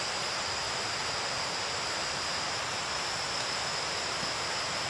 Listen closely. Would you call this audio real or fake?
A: real